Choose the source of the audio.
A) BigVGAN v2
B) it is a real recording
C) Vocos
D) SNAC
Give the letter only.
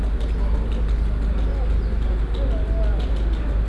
B